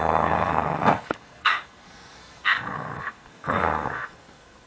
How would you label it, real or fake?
fake